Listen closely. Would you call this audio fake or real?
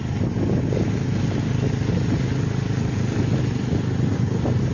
real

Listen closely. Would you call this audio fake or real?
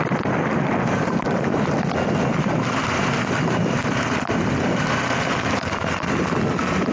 real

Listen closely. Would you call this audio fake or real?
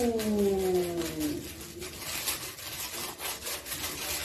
real